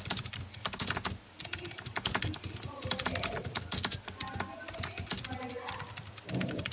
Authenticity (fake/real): real